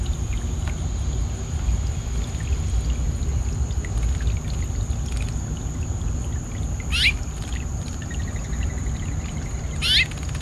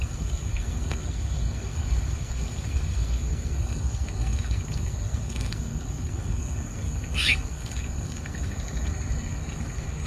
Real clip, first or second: first